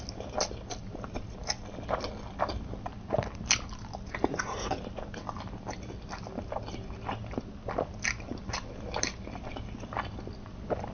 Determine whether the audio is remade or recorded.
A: recorded